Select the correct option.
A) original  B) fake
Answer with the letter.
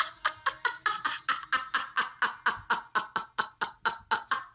A